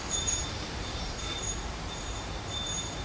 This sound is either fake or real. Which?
fake